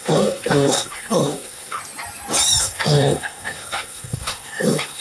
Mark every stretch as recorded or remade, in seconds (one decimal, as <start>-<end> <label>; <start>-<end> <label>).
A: 0.0-1.8 remade; 1.8-2.6 recorded; 2.6-5.0 remade